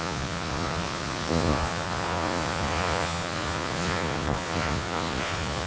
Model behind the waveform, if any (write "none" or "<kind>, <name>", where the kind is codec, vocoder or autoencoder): vocoder, Vocos